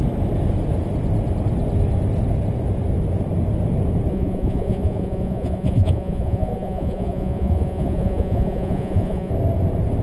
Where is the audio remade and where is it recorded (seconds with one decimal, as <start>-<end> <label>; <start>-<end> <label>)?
0.0-4.1 recorded; 4.1-9.3 remade; 9.3-10.0 recorded